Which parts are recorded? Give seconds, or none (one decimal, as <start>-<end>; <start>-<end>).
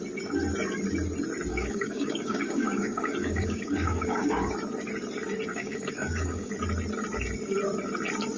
0.0-1.5; 4.5-5.5; 6.5-8.4